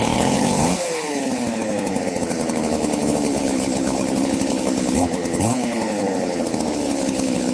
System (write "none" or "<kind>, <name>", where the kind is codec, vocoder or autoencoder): codec, HILCodec